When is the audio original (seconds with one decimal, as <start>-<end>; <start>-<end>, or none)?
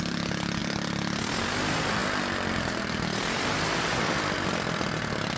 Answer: 0.0-5.4